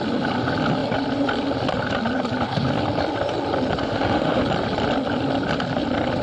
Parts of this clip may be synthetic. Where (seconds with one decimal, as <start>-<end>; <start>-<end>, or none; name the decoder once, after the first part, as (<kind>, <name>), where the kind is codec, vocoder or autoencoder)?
3.8-4.4 (autoencoder, DAC-VAE)